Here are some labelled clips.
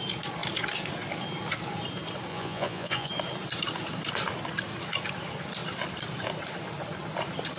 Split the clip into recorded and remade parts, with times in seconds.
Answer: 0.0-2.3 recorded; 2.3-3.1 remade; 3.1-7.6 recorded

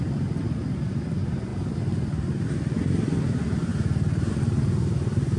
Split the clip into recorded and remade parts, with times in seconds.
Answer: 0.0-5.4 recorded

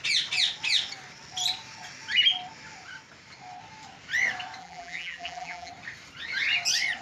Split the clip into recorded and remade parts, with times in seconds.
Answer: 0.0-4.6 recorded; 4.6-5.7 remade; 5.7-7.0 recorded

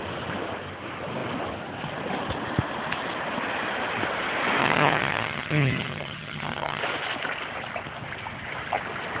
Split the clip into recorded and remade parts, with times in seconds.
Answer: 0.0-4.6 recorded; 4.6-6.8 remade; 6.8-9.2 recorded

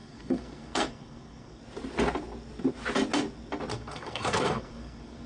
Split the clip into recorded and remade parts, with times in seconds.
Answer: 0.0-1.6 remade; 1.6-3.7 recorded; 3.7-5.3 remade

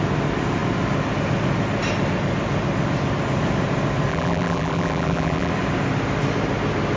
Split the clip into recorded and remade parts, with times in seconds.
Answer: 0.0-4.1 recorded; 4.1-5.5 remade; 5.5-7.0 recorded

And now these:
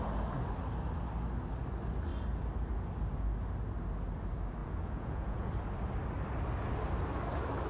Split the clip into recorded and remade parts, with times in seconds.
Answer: 0.0-4.6 recorded; 4.6-5.5 remade; 5.5-7.7 recorded

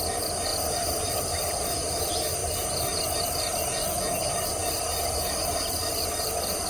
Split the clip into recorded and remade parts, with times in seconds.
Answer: 0.0-0.5 recorded; 0.5-2.0 remade; 2.0-2.4 recorded; 2.4-3.2 remade; 3.2-6.7 recorded